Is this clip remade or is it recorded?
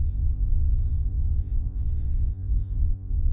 remade